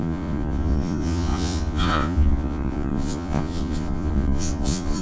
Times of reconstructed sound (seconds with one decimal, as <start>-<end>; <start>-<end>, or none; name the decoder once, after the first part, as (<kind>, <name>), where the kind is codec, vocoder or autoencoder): 0.0-5.0 (vocoder, Vocos)